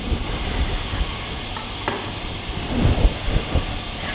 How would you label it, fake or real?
real